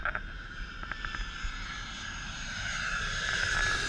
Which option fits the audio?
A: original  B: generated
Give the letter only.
A